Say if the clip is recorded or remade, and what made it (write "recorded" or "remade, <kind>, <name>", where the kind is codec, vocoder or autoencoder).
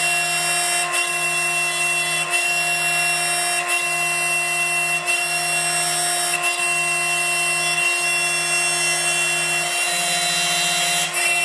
recorded